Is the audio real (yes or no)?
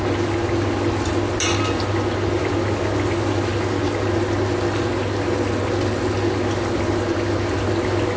yes